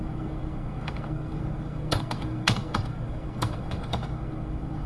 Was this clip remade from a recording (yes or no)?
yes